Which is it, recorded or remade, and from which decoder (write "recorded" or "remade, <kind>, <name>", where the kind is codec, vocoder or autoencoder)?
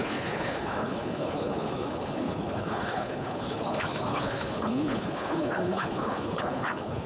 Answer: remade, codec, HILCodec